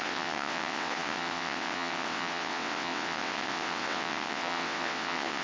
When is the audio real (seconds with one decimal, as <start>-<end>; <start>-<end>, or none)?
none